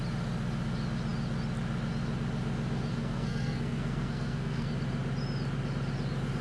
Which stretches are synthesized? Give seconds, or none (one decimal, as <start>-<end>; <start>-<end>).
2.9-4.7